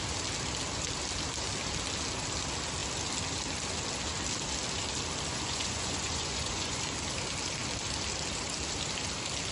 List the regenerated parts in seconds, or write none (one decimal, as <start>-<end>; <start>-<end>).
5.3-6.8